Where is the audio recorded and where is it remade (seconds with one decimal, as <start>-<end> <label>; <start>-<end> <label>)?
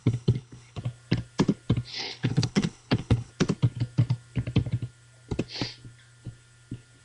0.0-0.8 remade; 0.8-1.9 recorded; 1.9-3.3 remade; 3.3-7.0 recorded